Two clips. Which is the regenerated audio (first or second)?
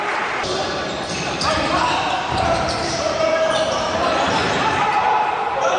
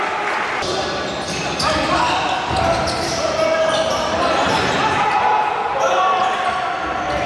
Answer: first